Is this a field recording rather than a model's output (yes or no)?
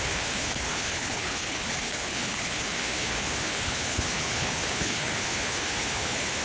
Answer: no